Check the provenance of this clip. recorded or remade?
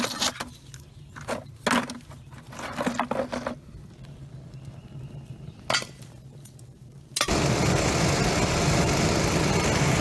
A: recorded